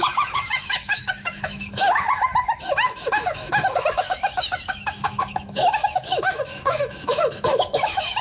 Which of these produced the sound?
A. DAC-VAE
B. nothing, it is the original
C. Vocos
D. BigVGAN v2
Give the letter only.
A